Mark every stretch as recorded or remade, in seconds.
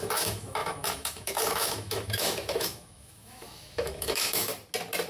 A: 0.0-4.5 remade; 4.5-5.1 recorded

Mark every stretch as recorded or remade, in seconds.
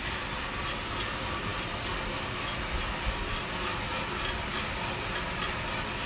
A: 0.0-6.1 recorded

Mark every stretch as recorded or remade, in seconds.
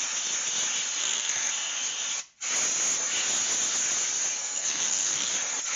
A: 0.0-1.0 recorded; 1.0-1.5 remade; 1.5-4.4 recorded; 4.4-5.3 remade; 5.3-5.8 recorded